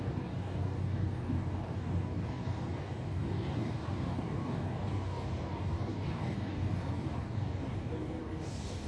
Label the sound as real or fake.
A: fake